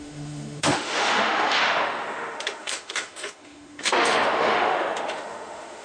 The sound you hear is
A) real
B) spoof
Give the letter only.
B